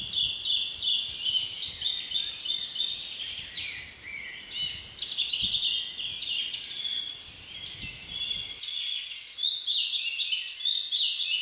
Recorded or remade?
recorded